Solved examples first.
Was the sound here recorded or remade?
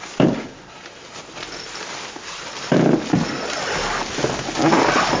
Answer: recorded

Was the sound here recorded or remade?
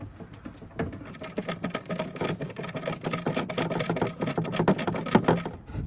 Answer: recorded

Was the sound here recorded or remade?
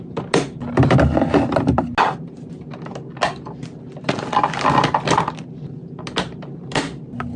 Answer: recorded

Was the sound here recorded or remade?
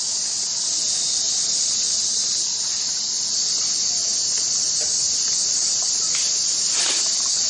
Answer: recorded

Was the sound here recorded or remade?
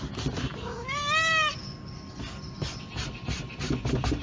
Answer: recorded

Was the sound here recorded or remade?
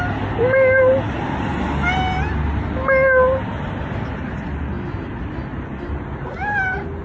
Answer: recorded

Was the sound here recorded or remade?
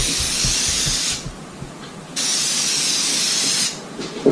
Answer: recorded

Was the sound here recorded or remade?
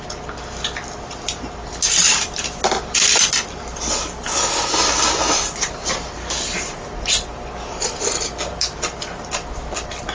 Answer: recorded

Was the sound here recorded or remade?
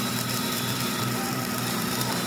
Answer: remade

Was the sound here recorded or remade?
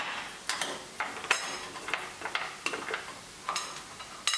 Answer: recorded